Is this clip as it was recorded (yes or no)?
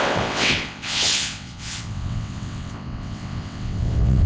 no